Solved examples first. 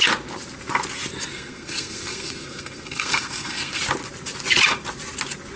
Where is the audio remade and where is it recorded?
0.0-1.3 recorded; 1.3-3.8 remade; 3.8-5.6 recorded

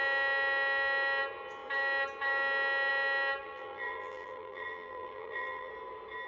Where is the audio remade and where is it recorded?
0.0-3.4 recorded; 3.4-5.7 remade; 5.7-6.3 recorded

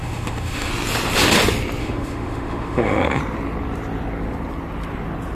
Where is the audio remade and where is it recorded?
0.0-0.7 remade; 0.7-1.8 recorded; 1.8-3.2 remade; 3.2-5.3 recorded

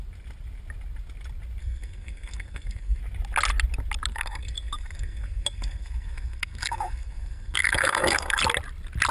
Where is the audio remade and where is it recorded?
0.0-1.6 recorded; 1.6-3.0 remade; 3.0-4.1 recorded; 4.1-8.4 remade; 8.4-9.1 recorded

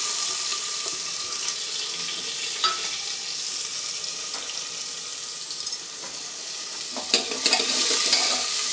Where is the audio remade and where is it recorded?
0.0-8.7 recorded

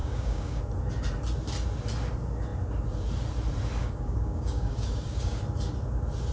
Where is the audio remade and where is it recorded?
0.0-0.6 remade; 0.6-3.8 recorded; 3.8-5.4 remade; 5.4-6.3 recorded